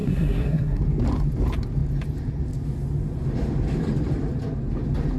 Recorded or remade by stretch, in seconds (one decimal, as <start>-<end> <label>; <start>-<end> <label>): 0.0-0.8 remade; 0.8-5.2 recorded